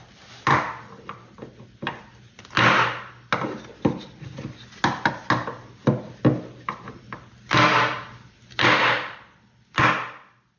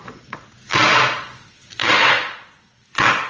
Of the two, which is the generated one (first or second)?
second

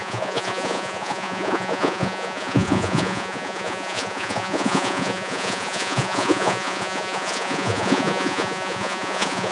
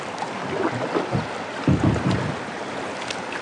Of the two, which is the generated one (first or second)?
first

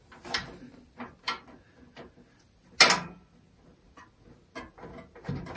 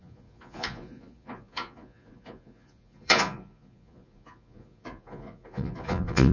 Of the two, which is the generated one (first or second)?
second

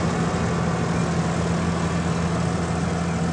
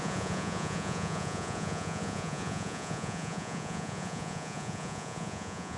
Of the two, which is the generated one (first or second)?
second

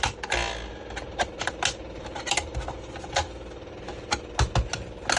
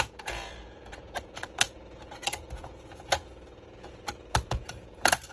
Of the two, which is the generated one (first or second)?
second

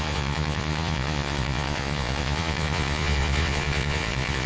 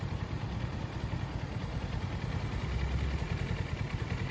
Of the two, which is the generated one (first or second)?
first